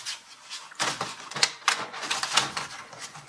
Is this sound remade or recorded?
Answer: remade